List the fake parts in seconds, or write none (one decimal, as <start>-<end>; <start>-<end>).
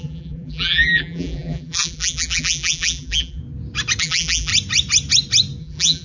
0.0-3.4; 4.0-4.5; 5.6-6.0